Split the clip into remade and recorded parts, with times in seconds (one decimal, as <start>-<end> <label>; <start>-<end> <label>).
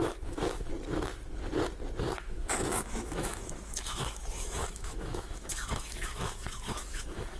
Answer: 0.0-0.7 remade; 0.7-2.2 recorded; 2.2-7.4 remade